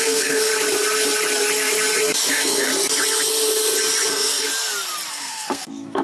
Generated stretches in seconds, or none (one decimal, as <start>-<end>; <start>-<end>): 0.0-0.5; 2.3-2.7; 4.1-4.5; 5.1-6.0